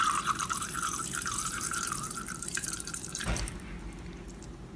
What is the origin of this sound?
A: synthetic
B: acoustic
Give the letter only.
A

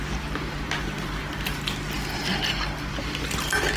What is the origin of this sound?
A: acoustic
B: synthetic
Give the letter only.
A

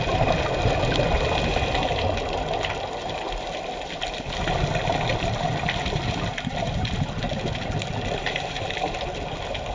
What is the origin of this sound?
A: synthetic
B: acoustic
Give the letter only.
B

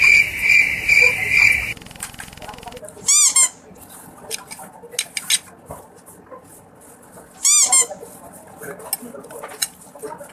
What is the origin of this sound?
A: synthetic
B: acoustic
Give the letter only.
B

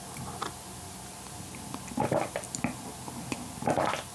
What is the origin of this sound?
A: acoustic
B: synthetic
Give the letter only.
A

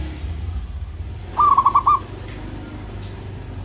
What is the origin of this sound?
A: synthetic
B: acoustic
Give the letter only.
B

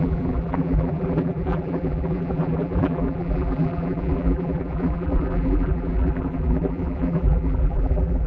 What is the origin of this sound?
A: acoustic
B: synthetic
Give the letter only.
B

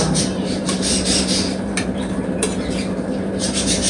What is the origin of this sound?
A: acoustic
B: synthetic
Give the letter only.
B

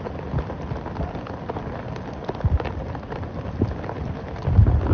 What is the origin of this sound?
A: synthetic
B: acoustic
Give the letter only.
A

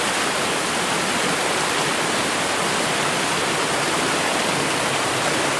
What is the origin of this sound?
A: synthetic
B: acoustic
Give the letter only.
B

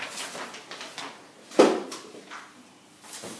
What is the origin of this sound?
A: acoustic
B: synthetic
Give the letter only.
A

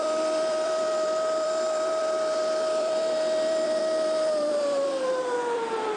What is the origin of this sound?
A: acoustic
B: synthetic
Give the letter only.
B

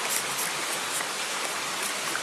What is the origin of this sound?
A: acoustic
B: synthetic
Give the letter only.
A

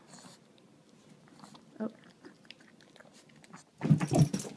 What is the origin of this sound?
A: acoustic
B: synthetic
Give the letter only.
A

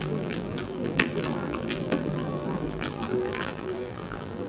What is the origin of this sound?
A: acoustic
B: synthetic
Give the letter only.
B